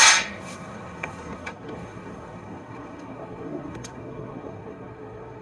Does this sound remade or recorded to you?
remade